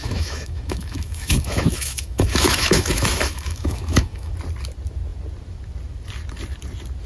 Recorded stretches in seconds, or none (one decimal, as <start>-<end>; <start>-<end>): 4.3-7.1